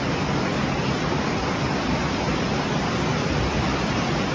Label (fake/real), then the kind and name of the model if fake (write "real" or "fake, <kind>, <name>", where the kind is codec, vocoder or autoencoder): real